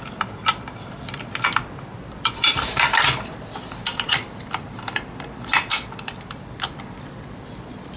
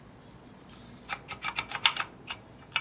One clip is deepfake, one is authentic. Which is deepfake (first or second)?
first